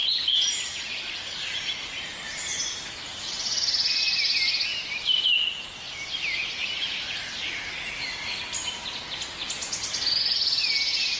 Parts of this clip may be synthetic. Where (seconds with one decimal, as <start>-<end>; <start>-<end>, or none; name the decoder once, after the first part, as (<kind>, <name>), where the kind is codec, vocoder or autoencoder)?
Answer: 0.0-2.9 (vocoder, BigVGAN v2)